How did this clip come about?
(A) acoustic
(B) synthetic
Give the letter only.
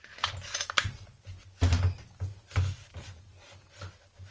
A